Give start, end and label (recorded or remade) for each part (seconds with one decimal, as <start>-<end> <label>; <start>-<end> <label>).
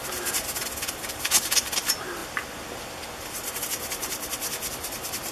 0.0-5.3 recorded